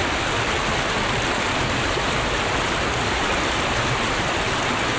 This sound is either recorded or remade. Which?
recorded